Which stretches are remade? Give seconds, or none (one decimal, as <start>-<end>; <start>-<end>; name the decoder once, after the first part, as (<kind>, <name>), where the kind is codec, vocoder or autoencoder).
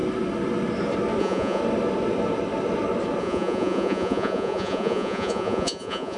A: 1.2-1.6 (vocoder, Vocos); 3.2-6.2